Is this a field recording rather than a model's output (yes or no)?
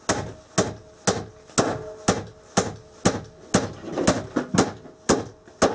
yes